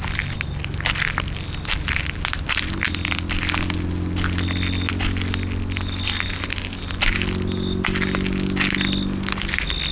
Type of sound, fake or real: real